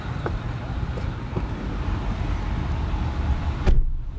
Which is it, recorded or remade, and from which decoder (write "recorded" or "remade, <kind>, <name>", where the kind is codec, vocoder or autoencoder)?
recorded